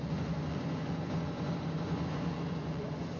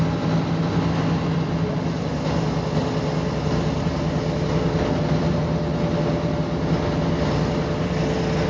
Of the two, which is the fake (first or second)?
first